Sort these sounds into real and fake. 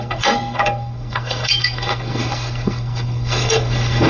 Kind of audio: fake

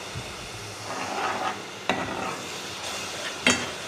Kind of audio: real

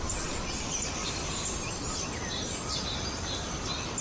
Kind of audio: real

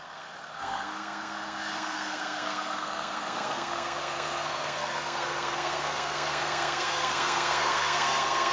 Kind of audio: fake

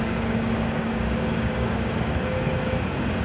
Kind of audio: fake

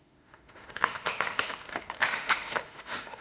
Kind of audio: fake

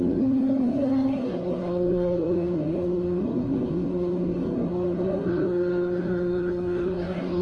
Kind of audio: fake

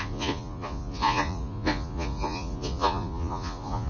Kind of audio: fake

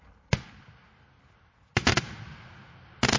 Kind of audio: real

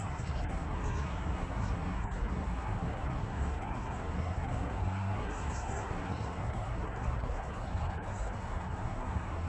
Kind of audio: fake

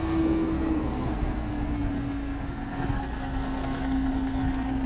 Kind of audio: fake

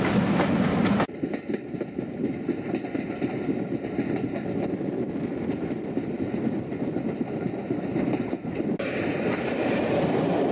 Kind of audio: real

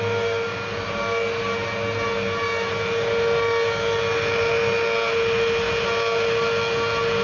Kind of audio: real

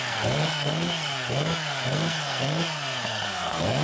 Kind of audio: fake